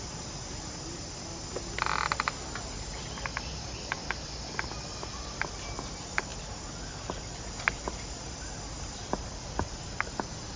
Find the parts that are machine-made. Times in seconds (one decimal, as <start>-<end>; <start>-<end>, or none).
none